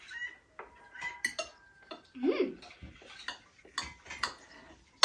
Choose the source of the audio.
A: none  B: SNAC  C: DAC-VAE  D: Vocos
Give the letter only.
A